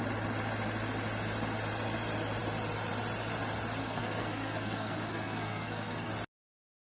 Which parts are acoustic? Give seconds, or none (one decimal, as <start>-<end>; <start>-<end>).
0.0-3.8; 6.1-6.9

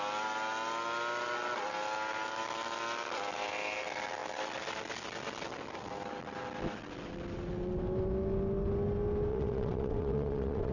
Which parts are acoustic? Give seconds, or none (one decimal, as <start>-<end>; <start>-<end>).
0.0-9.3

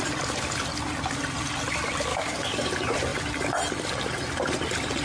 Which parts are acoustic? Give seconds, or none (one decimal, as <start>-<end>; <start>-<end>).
0.0-2.1; 2.7-5.0

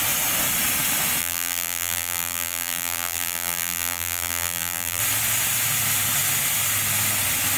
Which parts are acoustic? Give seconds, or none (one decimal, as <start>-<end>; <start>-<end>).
0.0-1.2; 5.0-7.6

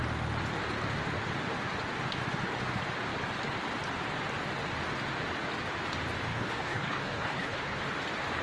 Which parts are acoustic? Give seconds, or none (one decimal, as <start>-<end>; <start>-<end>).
0.0-6.3; 7.8-8.4

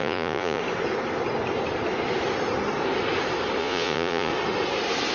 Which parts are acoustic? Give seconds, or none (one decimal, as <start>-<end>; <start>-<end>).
0.6-3.6; 4.3-5.1